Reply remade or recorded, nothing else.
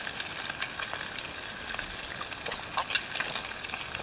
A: recorded